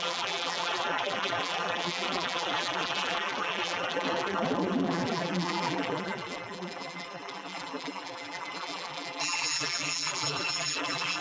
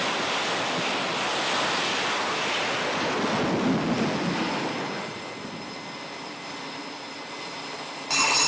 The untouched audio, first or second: second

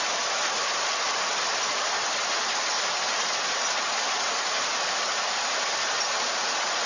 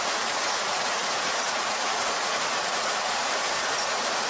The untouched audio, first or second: first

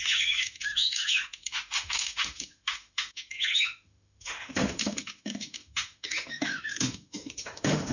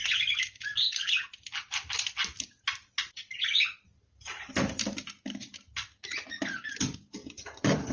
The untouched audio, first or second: second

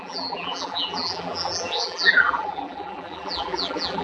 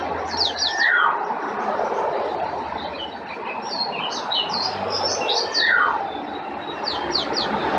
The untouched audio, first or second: second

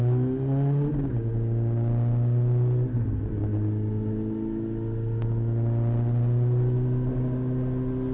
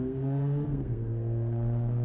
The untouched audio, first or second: first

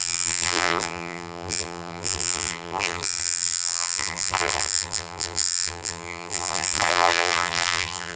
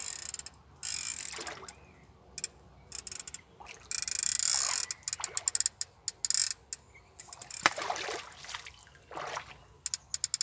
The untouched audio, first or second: second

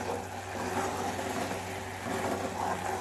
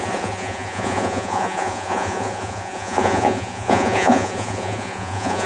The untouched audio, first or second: first